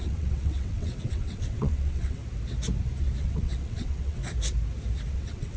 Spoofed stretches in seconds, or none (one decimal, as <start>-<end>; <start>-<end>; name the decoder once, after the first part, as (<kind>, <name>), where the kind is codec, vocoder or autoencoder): 0.0-2.2 (vocoder, WaveNeXt); 3.2-4.2; 5.1-5.6